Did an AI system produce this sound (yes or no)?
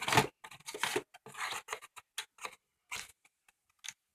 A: no